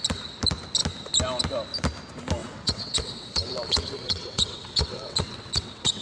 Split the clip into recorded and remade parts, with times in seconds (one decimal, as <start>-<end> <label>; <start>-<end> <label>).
0.0-2.4 recorded; 2.4-6.0 remade